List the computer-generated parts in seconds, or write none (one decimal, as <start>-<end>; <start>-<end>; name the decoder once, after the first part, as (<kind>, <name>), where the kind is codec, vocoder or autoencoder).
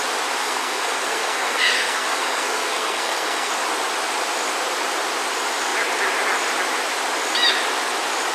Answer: 0.4-3.5 (codec, SNAC)